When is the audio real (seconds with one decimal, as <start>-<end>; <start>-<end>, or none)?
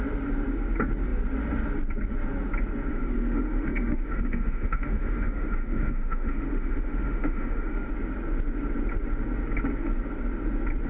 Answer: 0.0-2.9; 7.9-10.9